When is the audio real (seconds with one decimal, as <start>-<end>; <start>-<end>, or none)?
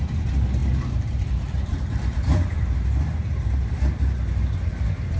0.0-0.6; 3.7-5.2